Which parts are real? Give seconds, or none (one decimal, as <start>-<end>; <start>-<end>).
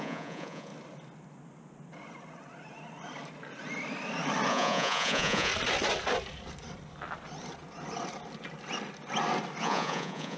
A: 0.7-4.5; 5.5-9.6